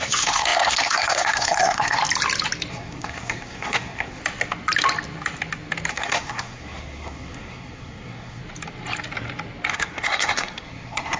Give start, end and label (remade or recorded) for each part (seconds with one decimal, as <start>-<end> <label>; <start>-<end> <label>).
0.0-2.0 remade; 2.0-2.7 recorded; 2.7-4.2 remade; 4.2-5.9 recorded; 5.9-8.4 remade; 8.4-9.7 recorded; 9.7-11.2 remade